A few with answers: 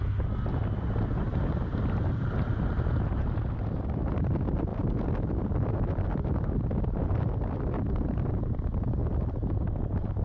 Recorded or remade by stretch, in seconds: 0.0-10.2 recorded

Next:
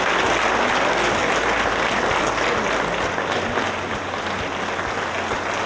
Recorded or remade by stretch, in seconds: 0.0-5.7 recorded

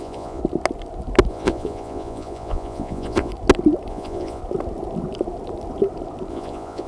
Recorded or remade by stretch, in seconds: 0.0-0.4 remade; 0.4-1.3 recorded; 1.3-3.3 remade; 3.3-3.9 recorded; 3.9-4.4 remade; 4.4-6.3 recorded; 6.3-6.9 remade

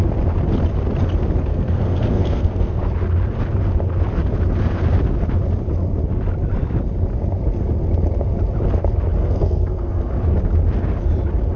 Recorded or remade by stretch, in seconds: 0.0-1.5 recorded; 1.5-2.8 remade; 2.8-9.2 recorded; 9.2-10.1 remade; 10.1-11.6 recorded